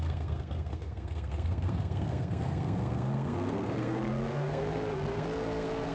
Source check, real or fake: fake